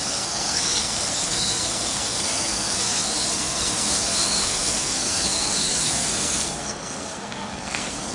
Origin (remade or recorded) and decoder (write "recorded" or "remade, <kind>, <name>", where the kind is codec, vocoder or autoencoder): remade, codec, SNAC